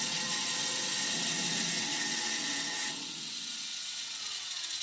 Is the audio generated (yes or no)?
yes